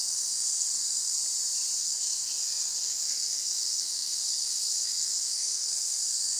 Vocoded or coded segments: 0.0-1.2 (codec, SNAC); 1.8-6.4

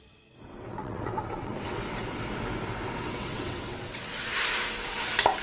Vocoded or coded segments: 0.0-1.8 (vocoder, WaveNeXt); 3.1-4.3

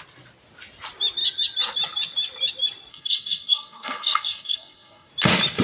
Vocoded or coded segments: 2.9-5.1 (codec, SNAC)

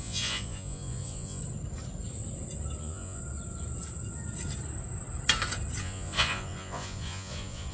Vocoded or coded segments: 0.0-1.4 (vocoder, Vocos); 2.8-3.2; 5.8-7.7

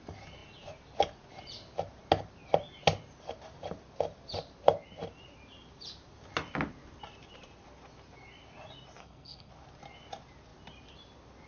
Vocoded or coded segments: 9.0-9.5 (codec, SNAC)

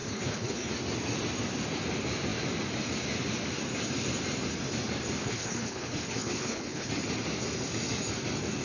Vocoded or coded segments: 0.0-0.7 (codec, HILCodec); 5.2-6.9

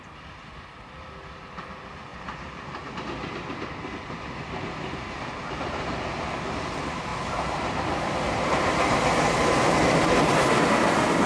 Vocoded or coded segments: none